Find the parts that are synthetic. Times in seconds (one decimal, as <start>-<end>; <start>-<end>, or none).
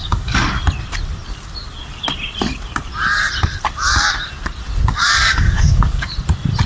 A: 0.0-0.6; 4.9-6.1